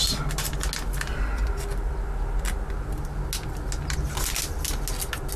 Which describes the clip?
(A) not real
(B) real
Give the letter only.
B